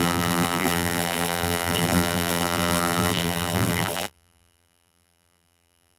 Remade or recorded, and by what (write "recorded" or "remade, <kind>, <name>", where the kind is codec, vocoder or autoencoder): remade, vocoder, BigVGAN v2